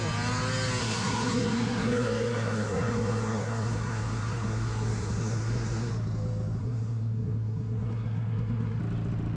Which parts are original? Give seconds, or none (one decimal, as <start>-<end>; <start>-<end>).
0.0-0.8; 5.9-6.6; 8.8-9.4